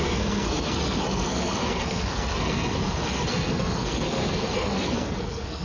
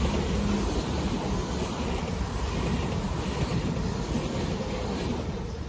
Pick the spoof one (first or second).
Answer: first